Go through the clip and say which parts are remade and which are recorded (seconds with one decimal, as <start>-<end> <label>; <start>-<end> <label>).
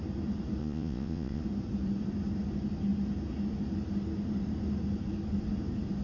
0.0-0.6 recorded; 0.6-1.4 remade; 1.4-6.0 recorded